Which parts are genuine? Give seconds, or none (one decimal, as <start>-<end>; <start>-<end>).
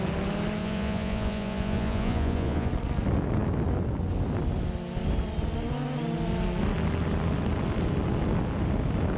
0.0-0.6; 2.7-9.2